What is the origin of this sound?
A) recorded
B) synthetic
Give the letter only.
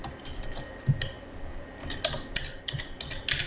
A